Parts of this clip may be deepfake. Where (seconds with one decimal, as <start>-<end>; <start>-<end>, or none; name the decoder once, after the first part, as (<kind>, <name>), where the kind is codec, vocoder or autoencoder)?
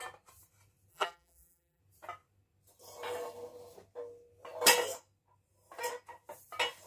0.9-1.8 (vocoder, BigVGAN v2)